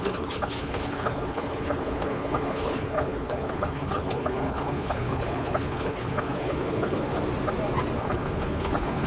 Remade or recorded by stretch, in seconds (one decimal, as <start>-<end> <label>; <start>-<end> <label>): 0.0-7.1 remade; 7.1-8.0 recorded; 8.0-9.1 remade